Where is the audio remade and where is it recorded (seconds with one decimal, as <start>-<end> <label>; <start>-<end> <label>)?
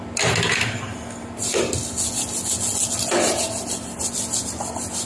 0.0-5.1 recorded